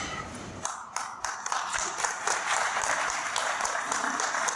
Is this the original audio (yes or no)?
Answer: no